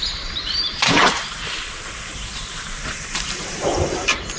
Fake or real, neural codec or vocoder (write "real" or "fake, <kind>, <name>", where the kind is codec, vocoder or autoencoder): fake, vocoder, BigVGAN v2